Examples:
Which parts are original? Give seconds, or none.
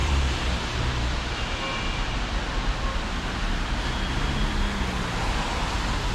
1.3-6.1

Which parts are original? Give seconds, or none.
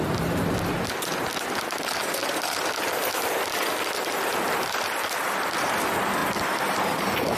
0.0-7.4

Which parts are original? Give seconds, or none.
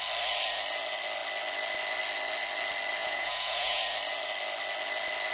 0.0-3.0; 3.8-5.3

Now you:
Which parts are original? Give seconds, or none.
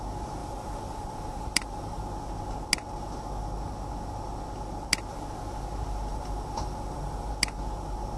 0.0-0.4; 2.0-6.1; 7.3-8.2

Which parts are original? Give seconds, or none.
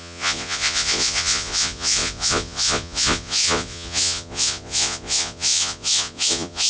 none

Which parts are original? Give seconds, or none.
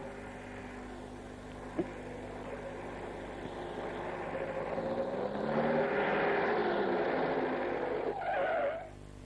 0.0-9.2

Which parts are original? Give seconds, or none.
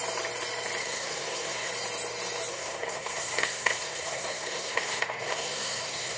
0.0-0.8; 1.7-2.5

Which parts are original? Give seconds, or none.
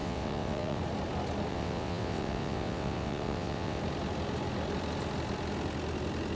0.8-1.5; 3.8-6.3